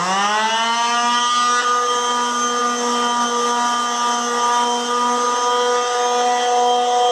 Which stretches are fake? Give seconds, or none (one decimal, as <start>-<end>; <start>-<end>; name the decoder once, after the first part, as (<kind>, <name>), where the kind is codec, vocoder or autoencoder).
none